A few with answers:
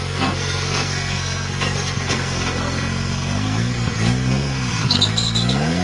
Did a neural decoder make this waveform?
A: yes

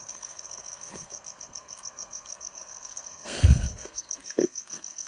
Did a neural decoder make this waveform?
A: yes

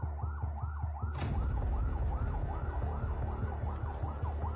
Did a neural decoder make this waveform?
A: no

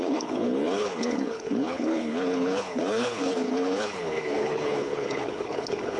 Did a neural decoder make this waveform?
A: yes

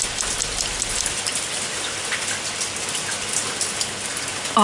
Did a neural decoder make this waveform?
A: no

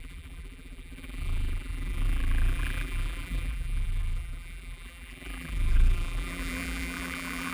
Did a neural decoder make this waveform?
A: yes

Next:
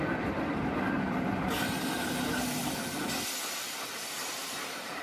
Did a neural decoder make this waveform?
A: yes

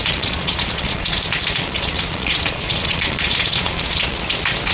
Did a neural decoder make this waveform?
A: yes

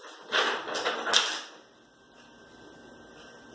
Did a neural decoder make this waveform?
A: no